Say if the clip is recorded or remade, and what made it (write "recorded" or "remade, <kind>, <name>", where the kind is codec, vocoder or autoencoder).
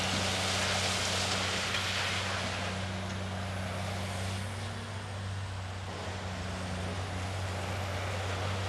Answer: recorded